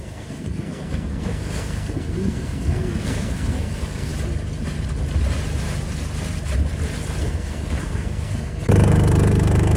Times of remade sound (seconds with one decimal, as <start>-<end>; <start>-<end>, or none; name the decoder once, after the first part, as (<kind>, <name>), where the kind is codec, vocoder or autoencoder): 0.0-4.1 (codec, SNAC); 7.2-9.8